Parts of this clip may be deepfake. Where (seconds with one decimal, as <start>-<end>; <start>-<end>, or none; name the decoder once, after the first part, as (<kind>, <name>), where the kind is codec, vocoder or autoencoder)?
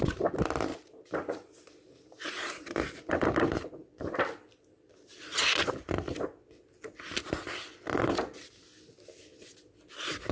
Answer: 0.7-3.1 (vocoder, BigVGAN v2)